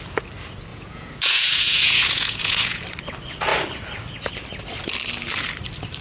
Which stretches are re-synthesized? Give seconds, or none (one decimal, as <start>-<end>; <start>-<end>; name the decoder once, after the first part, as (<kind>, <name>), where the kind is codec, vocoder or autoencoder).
0.7-2.8 (vocoder, Vocos)

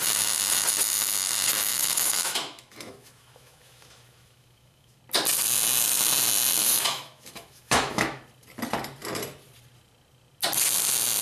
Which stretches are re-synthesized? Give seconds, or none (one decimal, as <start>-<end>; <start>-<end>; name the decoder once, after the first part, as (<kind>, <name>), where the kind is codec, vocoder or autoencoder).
1.7-5.0 (autoencoder, DAC-VAE); 6.6-8.2

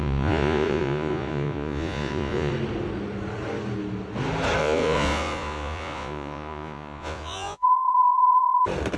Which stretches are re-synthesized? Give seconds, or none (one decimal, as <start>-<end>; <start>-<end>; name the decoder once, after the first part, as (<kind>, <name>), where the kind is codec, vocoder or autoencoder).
0.0-2.5 (vocoder, Vocos); 4.6-8.6

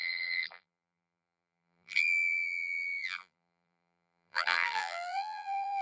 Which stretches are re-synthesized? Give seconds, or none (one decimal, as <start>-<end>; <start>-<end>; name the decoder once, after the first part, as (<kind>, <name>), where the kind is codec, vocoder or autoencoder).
0.0-5.8 (vocoder, BigVGAN v2)

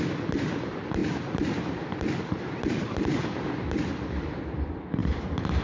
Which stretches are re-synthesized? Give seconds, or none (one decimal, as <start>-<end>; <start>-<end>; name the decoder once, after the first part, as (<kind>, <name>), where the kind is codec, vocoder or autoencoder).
5.0-5.6 (vocoder, BigVGAN v2)